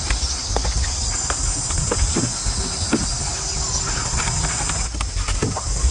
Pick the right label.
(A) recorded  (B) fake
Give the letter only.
A